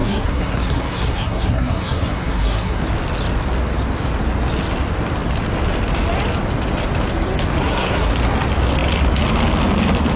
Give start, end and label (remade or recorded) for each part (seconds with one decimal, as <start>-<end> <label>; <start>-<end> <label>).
0.0-2.8 remade; 2.8-7.6 recorded; 7.6-8.1 remade; 8.1-10.2 recorded

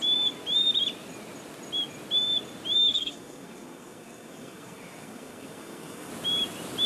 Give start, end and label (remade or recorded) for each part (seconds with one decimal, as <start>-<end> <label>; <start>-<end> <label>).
0.0-2.8 recorded; 2.8-6.1 remade; 6.1-6.9 recorded

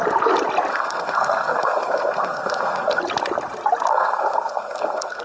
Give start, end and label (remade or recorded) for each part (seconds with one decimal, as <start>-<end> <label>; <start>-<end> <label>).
0.0-0.7 recorded; 0.7-3.0 remade; 3.0-3.9 recorded; 3.9-5.2 remade

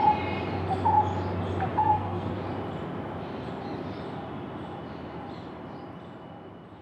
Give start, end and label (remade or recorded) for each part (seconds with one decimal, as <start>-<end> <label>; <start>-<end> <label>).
0.0-1.7 recorded; 1.7-2.3 remade; 2.3-6.8 recorded

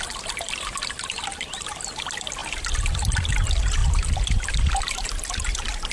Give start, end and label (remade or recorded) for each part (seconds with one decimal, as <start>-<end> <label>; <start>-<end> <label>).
0.0-5.9 recorded

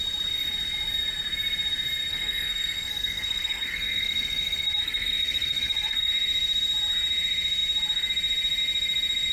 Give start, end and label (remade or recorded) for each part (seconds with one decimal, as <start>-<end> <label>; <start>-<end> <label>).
0.0-2.1 recorded; 2.1-6.1 remade; 6.1-9.3 recorded

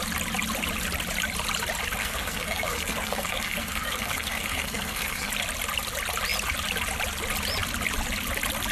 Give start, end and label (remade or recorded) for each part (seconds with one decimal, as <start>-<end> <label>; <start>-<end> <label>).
0.0-2.0 recorded; 2.0-5.3 remade; 5.3-8.7 recorded

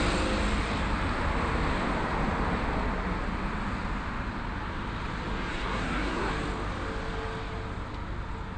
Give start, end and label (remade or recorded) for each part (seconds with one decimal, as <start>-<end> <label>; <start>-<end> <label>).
0.0-5.5 recorded; 5.5-6.3 remade; 6.3-8.6 recorded